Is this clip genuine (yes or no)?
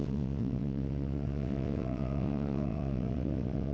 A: no